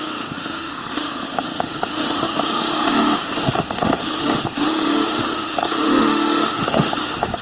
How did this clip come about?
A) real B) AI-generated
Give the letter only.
B